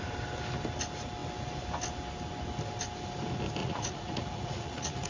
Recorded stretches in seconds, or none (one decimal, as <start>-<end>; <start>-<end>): 0.0-3.6